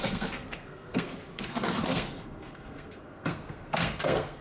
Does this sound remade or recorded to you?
remade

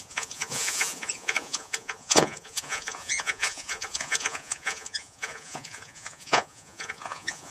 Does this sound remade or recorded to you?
remade